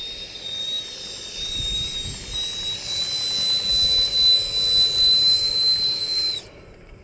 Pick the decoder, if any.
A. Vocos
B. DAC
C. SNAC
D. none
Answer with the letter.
D